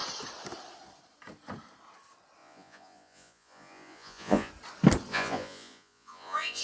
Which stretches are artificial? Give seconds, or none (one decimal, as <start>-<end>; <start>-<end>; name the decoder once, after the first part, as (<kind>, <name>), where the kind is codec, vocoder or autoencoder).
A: 2.4-4.5 (vocoder, Vocos); 5.1-6.6